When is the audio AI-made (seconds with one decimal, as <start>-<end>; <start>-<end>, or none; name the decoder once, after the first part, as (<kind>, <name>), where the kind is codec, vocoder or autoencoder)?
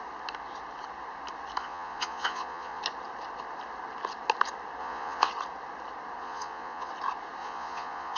1.6-2.8 (vocoder, Vocos); 4.8-5.3; 6.2-6.9; 7.4-8.2